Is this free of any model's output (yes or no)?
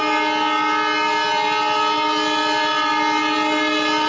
yes